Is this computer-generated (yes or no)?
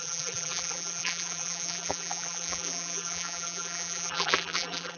yes